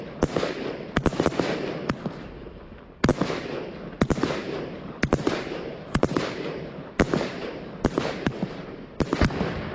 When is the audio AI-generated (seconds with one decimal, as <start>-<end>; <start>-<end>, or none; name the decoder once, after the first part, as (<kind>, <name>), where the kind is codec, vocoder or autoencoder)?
4.4-9.1 (vocoder, BigVGAN v2)